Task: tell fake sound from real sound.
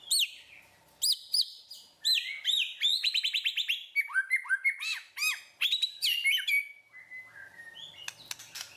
real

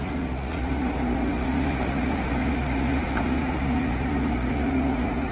fake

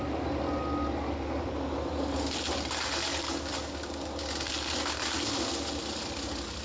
real